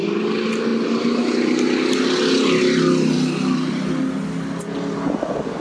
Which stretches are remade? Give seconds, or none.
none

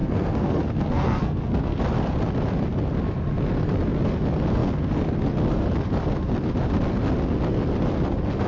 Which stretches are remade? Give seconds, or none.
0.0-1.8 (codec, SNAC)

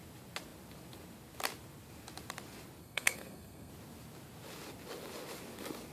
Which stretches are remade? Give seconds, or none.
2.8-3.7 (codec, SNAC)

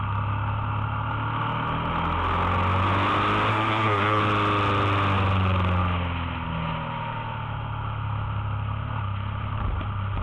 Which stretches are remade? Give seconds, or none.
3.5-4.2 (codec, SNAC)

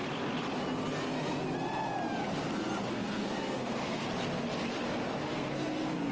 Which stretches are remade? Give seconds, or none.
2.9-4.0 (codec, SNAC); 5.2-6.1

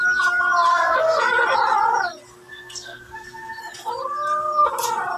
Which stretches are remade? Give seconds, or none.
0.7-1.2 (codec, SNAC); 2.5-3.6

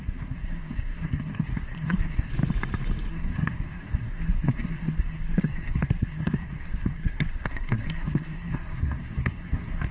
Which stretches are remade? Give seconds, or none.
0.0-2.3 (codec, SNAC); 3.1-9.9

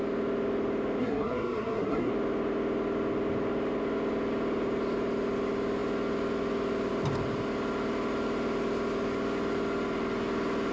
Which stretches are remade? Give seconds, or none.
1.0-2.1 (codec, SNAC)